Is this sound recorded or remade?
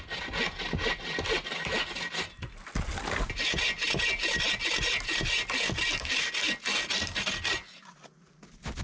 recorded